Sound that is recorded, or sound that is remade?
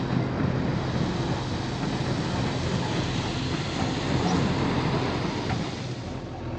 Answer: recorded